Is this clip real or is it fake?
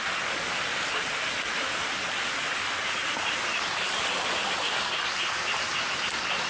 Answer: real